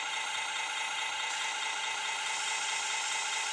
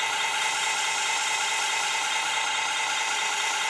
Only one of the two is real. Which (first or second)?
first